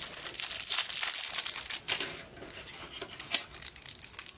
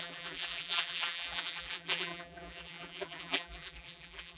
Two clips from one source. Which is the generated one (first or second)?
second